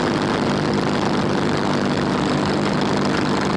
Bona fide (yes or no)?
yes